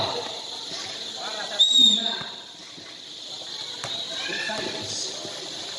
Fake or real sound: real